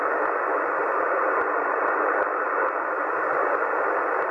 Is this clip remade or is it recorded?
recorded